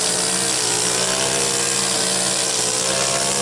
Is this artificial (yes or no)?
no